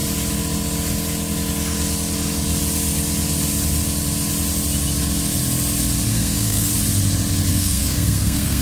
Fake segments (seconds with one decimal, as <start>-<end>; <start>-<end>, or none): 6.1-6.7; 7.5-8.6